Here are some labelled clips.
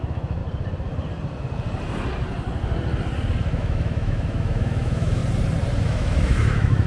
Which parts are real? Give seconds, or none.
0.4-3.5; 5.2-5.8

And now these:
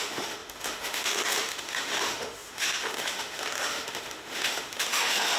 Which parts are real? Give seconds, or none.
none